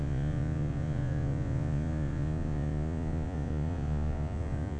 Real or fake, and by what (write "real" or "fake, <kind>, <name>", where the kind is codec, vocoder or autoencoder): fake, vocoder, Vocos